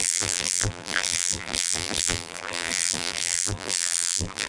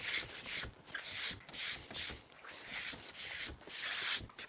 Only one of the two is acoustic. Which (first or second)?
second